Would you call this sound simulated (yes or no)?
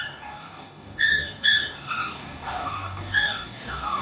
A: yes